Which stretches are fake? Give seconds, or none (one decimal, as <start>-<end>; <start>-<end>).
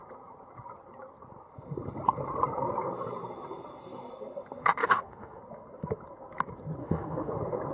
4.8-5.4; 6.8-7.3